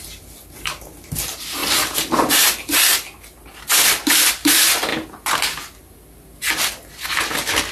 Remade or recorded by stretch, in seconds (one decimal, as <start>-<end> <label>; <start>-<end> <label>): 0.0-7.7 recorded